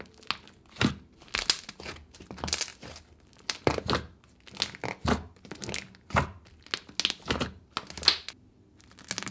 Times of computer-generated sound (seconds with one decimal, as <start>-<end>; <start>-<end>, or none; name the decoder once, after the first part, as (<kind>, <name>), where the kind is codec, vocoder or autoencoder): none

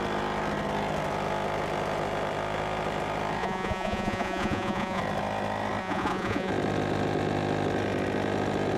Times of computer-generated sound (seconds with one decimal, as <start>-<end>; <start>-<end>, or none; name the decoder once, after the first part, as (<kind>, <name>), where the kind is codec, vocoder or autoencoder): 3.4-5.0 (vocoder, Vocos); 5.8-6.5

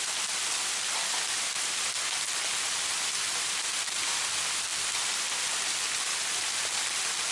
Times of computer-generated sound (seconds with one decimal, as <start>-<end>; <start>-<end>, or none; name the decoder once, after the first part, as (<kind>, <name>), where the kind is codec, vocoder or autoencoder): none

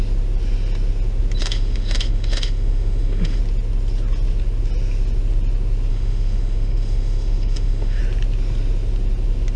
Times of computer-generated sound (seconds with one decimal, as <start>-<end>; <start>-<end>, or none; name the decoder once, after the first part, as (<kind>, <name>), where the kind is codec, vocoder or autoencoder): 1.4-3.4 (autoencoder, DAC-VAE); 5.9-8.0

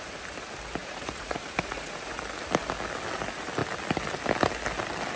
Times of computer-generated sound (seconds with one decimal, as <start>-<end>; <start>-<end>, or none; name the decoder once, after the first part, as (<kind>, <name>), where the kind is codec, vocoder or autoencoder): 0.8-2.2 (vocoder, Vocos)

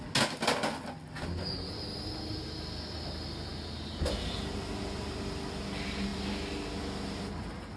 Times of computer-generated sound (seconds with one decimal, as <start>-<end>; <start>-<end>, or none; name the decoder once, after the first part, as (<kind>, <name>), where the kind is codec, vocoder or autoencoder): none